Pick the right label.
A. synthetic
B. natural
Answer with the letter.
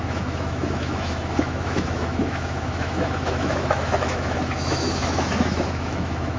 A